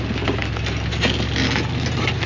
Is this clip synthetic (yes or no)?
no